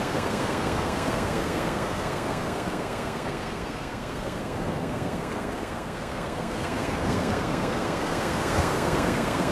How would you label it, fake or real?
fake